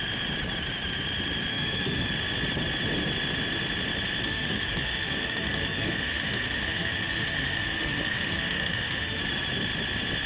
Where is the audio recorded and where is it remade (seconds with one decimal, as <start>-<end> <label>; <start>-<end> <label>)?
0.0-1.5 recorded; 1.5-2.1 remade; 2.1-4.2 recorded; 4.2-9.2 remade; 9.2-10.3 recorded